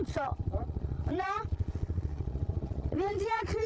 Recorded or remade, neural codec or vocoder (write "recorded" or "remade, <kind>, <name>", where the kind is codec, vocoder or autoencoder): remade, vocoder, Vocos